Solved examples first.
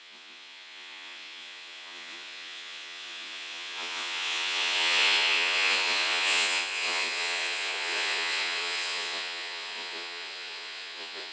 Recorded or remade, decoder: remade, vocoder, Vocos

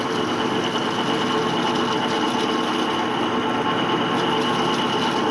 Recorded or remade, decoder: recorded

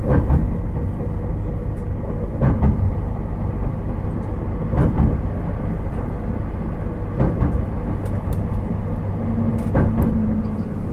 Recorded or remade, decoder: recorded